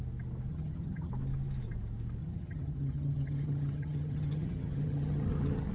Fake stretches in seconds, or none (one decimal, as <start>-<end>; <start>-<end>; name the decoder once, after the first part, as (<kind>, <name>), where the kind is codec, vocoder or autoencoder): 0.5-1.1 (vocoder, HiFi-GAN); 2.2-5.7